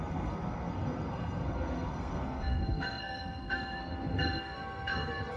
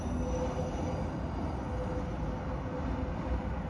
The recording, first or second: second